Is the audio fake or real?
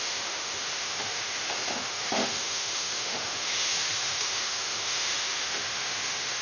fake